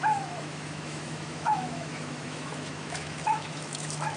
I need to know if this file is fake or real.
fake